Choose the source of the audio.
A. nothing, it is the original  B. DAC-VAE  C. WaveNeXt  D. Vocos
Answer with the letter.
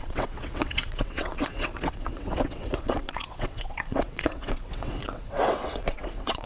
C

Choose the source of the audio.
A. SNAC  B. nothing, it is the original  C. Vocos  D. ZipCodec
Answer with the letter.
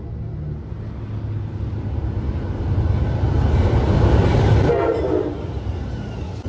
B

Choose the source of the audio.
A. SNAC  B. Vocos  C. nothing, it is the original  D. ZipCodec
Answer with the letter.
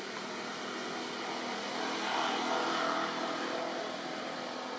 C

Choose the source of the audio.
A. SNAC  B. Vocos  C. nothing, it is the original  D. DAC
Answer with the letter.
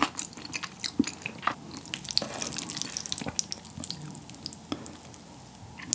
C